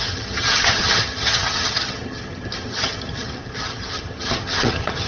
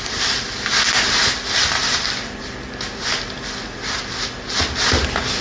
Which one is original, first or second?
second